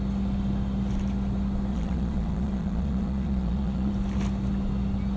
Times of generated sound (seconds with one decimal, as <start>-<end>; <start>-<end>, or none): 1.7-3.9